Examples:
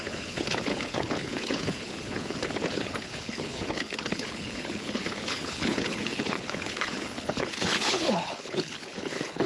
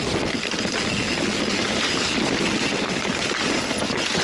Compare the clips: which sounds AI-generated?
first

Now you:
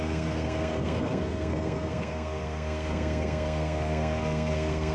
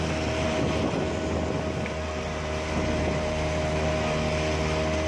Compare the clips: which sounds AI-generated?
first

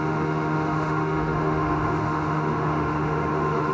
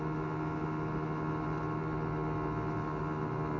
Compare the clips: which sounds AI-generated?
first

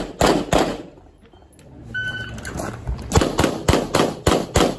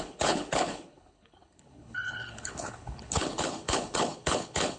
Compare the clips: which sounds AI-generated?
second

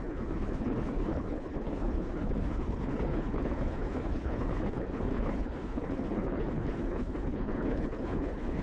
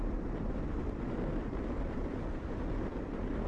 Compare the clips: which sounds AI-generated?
first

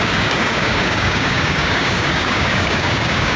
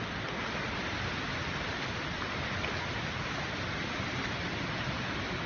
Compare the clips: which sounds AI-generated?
first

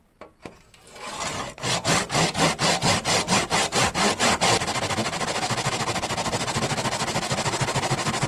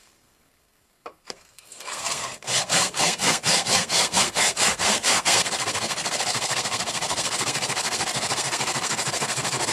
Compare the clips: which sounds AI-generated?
second